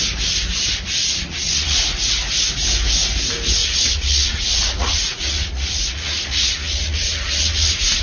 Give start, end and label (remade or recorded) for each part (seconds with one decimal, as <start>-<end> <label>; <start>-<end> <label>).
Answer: 0.0-1.0 recorded; 1.0-2.1 remade; 2.1-3.6 recorded; 3.6-8.0 remade